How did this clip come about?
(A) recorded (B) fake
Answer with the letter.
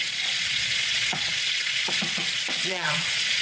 B